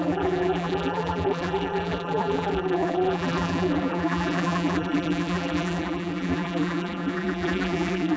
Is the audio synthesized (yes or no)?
yes